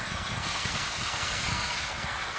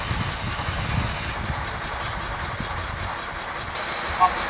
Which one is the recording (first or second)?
second